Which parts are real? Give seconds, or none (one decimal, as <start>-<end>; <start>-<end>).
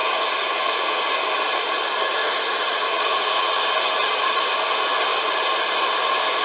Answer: 1.0-2.2; 3.7-6.4